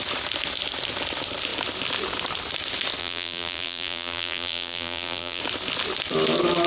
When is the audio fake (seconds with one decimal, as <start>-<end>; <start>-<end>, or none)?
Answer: 3.0-5.4